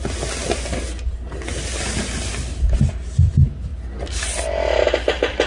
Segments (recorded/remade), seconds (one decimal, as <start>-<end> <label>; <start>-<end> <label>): 0.0-5.5 recorded